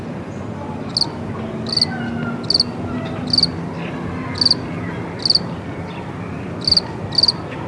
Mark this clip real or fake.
real